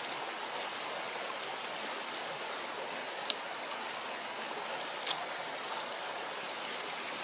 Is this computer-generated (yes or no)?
no